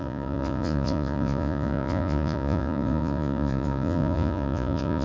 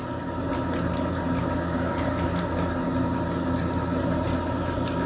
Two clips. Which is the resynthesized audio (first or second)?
first